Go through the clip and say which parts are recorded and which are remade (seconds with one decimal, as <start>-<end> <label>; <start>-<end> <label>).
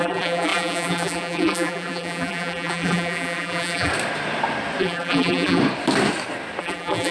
0.0-3.9 remade; 3.9-4.8 recorded; 4.8-5.6 remade; 5.6-6.6 recorded; 6.6-7.1 remade